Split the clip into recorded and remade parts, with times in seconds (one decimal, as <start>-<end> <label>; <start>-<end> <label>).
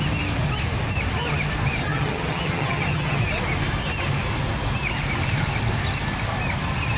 0.0-1.8 recorded; 1.8-3.2 remade; 3.2-7.0 recorded